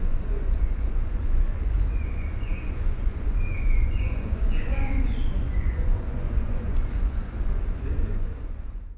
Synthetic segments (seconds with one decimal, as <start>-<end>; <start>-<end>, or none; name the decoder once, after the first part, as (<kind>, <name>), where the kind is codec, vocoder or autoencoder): 0.0-9.0 (vocoder, Vocos)